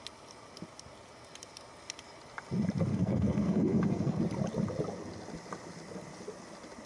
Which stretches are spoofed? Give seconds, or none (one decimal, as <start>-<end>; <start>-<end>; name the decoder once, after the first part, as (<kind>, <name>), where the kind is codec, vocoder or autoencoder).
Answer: 2.9-4.2 (codec, SNAC)